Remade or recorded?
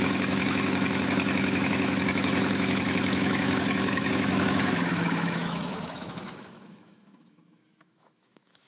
remade